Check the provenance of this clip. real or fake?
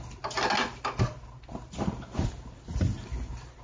real